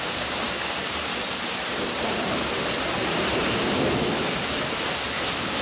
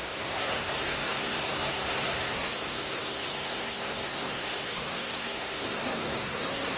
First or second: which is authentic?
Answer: first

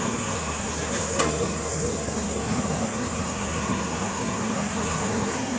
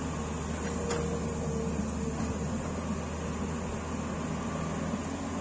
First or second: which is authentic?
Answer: second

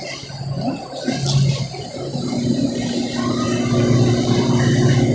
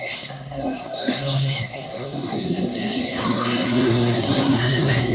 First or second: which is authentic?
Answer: first